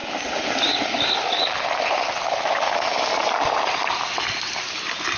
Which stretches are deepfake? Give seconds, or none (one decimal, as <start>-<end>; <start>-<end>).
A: none